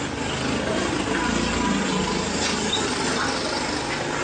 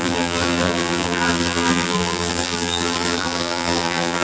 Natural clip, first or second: first